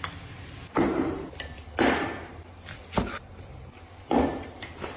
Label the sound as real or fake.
fake